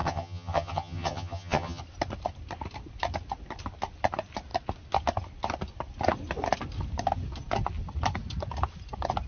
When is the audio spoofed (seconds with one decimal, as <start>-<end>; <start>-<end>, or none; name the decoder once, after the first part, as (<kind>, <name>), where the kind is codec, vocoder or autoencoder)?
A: 0.0-1.8 (vocoder, HiFi-GAN)